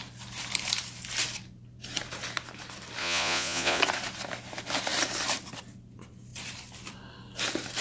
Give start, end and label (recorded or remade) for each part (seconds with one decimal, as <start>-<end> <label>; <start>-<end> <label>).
0.0-3.0 recorded; 3.0-3.8 remade; 3.8-7.8 recorded